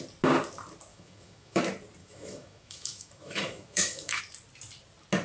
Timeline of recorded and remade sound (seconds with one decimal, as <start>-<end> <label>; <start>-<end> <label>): 0.0-0.9 recorded; 0.9-1.6 remade; 1.6-2.0 recorded; 2.0-4.2 remade; 4.2-5.2 recorded